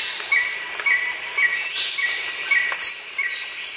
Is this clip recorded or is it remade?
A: recorded